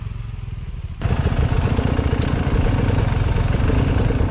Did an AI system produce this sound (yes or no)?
no